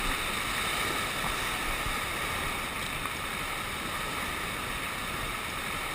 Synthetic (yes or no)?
no